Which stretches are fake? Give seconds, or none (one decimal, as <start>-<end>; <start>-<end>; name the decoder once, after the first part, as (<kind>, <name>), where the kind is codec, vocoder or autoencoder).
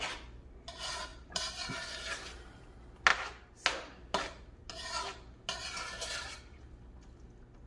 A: 1.1-1.7 (vocoder, BigVGAN v2); 5.6-6.6